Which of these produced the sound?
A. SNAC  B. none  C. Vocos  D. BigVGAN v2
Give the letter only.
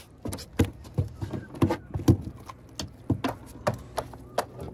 B